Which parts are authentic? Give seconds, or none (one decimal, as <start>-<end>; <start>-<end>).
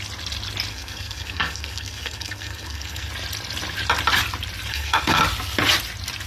0.0-0.7; 3.1-4.7; 5.2-6.3